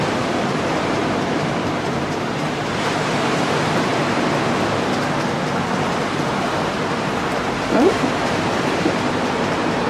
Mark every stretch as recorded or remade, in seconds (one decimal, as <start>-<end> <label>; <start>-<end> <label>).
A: 0.0-3.9 remade; 3.9-6.9 recorded; 6.9-9.9 remade